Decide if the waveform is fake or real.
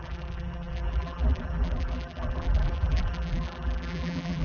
fake